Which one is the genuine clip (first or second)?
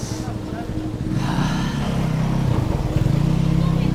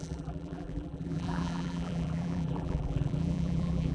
first